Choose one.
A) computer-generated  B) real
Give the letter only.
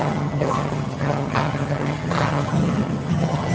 A